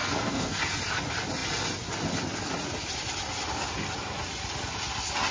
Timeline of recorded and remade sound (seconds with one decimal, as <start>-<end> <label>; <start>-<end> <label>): 0.0-0.6 remade; 0.6-5.3 recorded